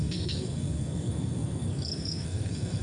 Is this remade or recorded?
remade